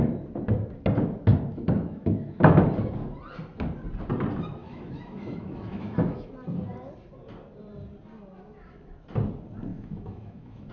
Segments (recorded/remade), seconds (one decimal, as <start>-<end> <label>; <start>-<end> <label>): 0.0-1.5 recorded; 1.5-2.6 remade; 2.6-4.6 recorded; 4.6-6.3 remade; 6.3-9.7 recorded; 9.7-10.7 remade